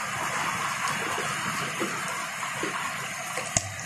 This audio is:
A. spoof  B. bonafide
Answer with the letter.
B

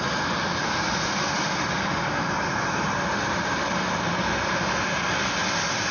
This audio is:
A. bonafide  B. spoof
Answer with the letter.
A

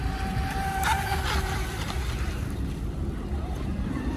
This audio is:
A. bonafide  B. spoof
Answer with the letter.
A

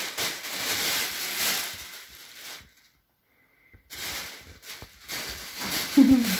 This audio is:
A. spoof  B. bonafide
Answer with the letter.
B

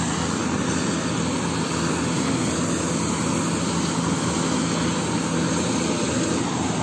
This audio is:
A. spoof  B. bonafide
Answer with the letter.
B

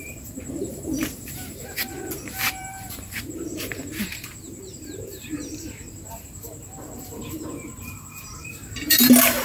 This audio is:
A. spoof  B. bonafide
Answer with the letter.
A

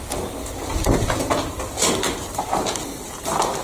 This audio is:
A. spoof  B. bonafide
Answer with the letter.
B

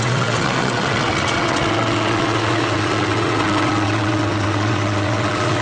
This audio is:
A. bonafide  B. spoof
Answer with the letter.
B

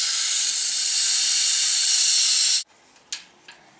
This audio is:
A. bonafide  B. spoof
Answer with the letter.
A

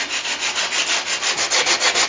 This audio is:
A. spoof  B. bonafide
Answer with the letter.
B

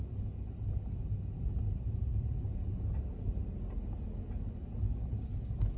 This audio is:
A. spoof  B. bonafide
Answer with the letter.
B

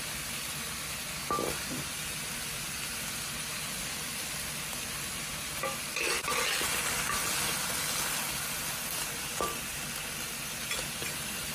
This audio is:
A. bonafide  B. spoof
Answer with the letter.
A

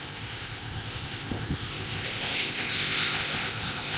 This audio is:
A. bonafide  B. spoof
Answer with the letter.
B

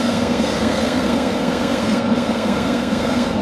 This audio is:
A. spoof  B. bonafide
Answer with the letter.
A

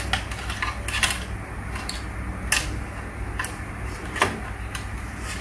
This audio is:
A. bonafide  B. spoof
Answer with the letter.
A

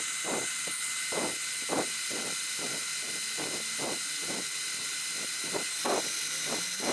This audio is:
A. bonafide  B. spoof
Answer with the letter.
A